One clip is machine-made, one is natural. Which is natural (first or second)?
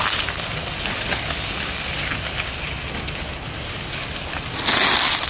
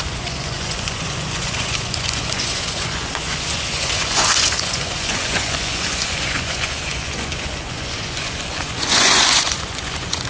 first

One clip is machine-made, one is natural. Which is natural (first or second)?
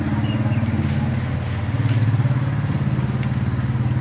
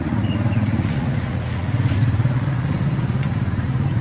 first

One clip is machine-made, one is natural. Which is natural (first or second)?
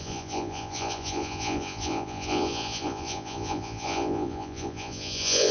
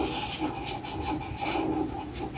second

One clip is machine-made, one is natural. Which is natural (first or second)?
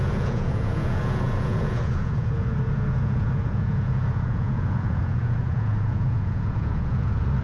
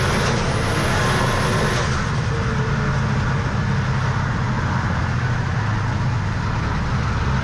second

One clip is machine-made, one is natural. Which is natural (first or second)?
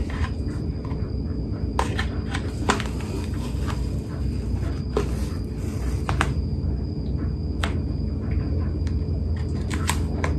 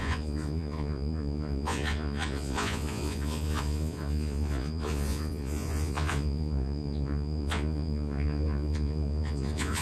first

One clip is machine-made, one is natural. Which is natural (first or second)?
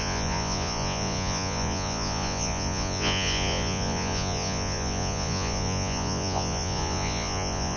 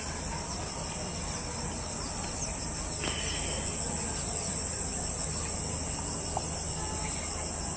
second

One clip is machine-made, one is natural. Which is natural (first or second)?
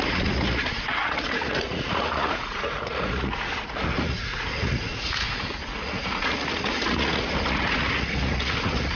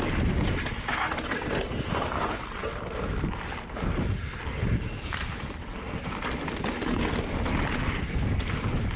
second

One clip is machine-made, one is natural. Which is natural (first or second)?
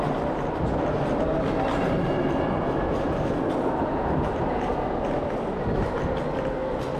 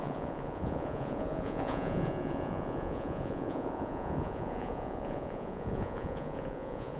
first